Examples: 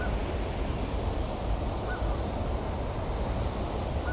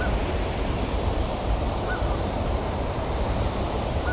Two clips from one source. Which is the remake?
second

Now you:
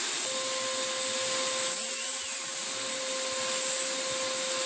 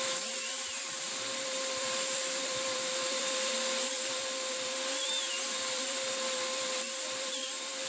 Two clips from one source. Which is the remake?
second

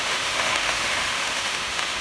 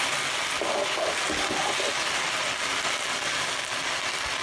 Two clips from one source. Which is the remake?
first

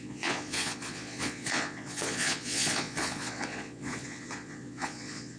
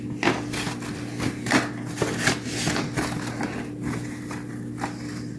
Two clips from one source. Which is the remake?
first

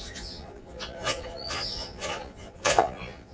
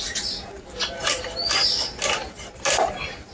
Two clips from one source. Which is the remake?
first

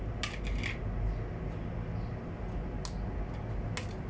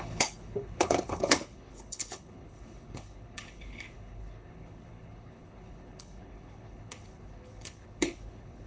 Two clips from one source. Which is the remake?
second